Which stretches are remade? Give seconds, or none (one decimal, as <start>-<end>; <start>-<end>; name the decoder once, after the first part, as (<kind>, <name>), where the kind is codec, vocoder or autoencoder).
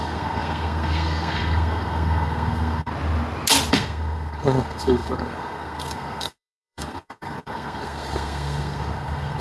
0.0-2.9 (codec, SNAC); 3.7-9.4